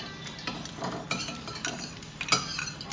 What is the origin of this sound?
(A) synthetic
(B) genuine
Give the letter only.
B